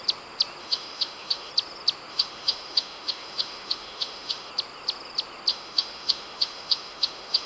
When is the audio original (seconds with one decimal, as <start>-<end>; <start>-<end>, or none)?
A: 0.0-0.6; 1.5-2.1; 4.5-5.5